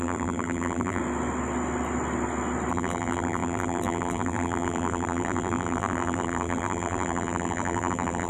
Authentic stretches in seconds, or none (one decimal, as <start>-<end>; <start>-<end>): 1.0-2.7